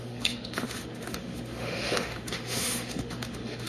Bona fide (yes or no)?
no